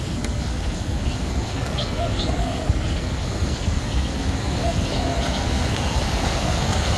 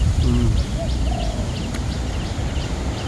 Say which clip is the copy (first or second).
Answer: first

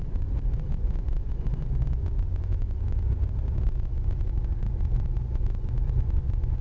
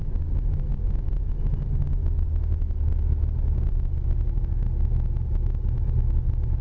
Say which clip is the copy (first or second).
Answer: first